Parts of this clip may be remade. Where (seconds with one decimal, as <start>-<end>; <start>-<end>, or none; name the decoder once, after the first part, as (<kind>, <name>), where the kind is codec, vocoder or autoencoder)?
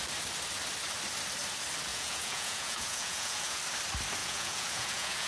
1.9-3.6 (vocoder, Vocos); 4.2-5.3